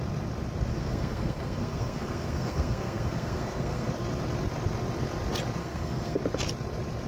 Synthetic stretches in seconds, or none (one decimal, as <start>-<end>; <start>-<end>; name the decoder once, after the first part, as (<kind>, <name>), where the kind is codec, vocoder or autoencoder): 0.7-3.9 (codec, SNAC); 5.6-6.2